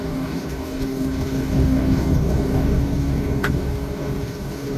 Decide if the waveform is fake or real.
fake